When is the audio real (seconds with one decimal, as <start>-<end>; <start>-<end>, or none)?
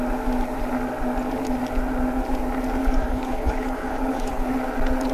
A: 0.0-2.8; 4.5-5.1